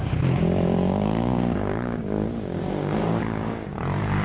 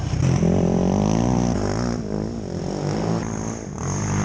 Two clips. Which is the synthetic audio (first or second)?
first